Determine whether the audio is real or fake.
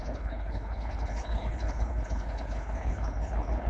fake